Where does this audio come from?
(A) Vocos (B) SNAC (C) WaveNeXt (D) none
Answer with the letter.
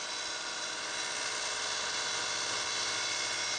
D